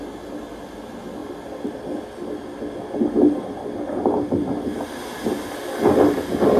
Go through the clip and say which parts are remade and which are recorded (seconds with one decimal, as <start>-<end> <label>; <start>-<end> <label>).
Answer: 0.0-6.6 recorded